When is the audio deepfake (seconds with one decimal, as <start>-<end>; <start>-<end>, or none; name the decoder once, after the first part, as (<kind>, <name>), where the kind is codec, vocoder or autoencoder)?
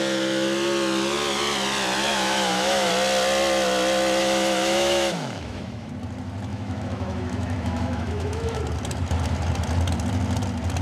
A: 2.1-2.9 (autoencoder, DAC-VAE); 4.2-5.9; 6.5-8.6